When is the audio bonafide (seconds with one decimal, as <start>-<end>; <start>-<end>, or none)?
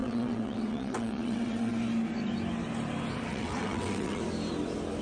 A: 1.7-3.3; 4.2-5.0